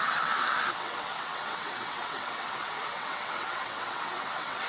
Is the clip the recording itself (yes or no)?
no